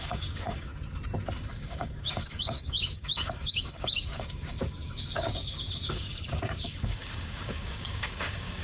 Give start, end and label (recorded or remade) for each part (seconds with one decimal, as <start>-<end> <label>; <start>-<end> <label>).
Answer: 0.0-0.7 remade; 0.7-1.5 recorded; 1.5-8.6 remade